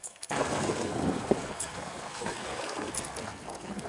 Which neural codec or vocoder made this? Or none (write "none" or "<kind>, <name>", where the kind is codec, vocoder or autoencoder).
codec, SNAC